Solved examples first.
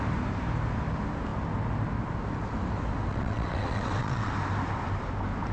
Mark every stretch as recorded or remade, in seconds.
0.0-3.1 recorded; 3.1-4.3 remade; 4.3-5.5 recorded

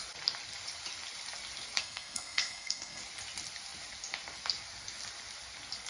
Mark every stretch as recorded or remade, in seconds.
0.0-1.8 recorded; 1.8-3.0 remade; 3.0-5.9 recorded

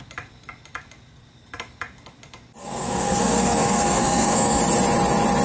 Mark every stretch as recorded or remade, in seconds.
0.0-2.6 recorded; 2.6-4.6 remade; 4.6-5.4 recorded